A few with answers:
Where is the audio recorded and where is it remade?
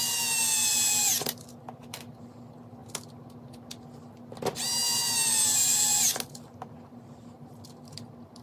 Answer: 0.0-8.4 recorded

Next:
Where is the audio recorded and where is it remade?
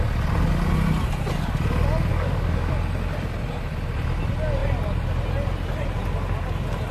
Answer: 0.0-2.1 recorded; 2.1-2.7 remade; 2.7-6.9 recorded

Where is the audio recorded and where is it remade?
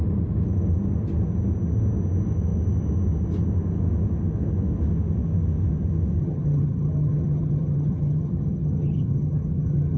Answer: 0.0-6.2 recorded; 6.2-10.0 remade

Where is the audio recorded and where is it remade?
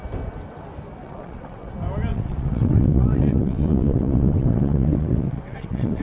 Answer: 0.0-1.0 recorded; 1.0-1.7 remade; 1.7-2.1 recorded; 2.1-6.0 remade